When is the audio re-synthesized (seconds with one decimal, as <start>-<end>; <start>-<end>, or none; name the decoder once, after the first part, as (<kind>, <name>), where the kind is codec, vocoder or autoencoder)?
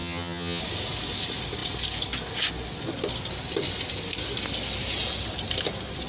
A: 0.0-0.6 (vocoder, HiFi-GAN)